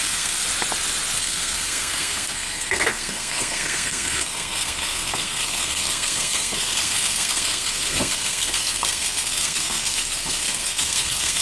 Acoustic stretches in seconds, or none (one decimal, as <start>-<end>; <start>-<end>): 0.4-1.2